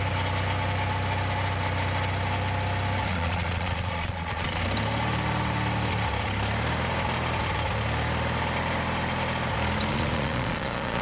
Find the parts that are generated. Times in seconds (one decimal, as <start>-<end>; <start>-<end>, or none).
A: 3.1-4.6; 9.9-11.0